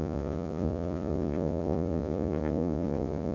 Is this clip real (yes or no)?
no